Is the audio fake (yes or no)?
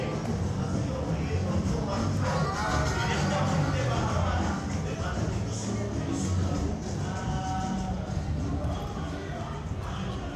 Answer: no